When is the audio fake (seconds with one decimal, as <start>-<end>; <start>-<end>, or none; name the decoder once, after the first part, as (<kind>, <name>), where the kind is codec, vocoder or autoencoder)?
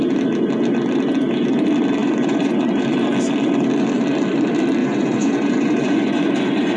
2.0-2.8 (vocoder, Vocos); 4.8-6.8